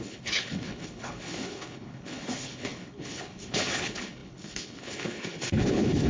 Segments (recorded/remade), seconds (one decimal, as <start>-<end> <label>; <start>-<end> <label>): 0.0-6.1 remade